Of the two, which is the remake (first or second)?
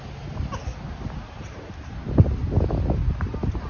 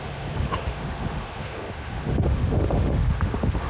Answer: second